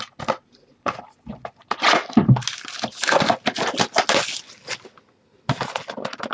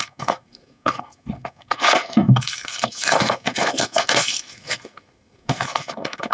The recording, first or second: first